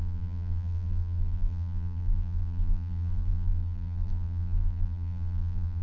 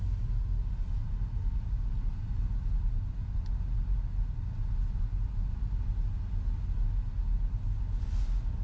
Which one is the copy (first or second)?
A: first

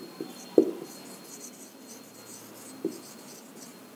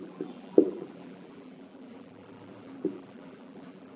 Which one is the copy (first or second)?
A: second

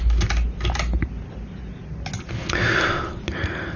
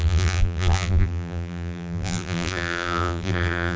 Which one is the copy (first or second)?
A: second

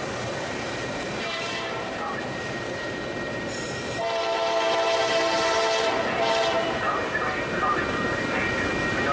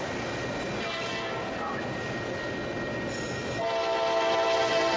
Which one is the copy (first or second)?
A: first